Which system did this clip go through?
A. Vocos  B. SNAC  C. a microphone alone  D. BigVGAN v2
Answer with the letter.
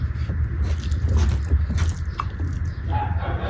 C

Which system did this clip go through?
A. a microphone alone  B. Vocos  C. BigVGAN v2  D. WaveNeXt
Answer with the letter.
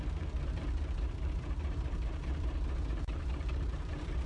C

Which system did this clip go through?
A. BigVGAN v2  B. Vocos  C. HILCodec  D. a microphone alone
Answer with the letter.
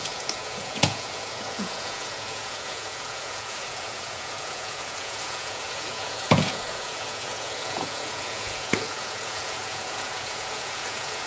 B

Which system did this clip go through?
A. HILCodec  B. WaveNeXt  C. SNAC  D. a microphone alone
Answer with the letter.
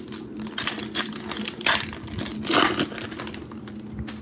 D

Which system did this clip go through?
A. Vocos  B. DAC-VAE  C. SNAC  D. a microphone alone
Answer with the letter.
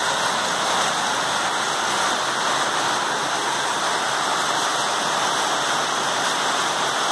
D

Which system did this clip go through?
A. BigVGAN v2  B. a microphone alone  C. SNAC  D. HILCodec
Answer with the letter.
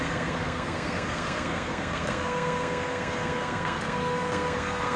C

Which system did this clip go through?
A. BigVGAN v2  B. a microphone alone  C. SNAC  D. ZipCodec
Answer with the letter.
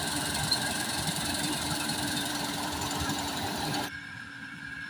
A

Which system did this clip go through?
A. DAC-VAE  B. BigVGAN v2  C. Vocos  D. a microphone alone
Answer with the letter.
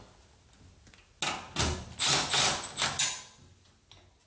D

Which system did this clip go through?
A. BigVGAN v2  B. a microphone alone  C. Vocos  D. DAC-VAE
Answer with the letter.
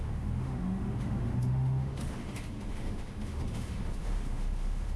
D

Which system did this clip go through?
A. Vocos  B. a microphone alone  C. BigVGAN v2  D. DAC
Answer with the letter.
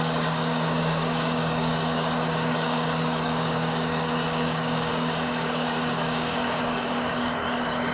D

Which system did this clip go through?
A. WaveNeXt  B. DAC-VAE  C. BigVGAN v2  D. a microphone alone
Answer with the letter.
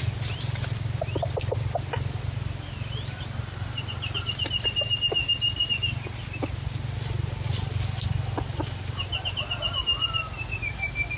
D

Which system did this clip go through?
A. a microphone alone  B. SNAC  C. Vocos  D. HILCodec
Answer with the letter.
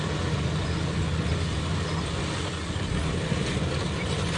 A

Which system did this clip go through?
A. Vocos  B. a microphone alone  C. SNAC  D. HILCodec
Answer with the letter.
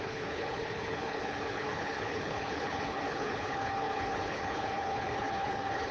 D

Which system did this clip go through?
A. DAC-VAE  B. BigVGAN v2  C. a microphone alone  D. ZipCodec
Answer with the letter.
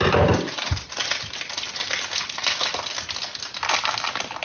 C